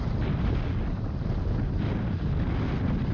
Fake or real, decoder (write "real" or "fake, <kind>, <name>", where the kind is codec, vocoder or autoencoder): real